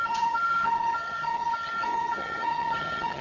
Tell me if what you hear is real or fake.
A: fake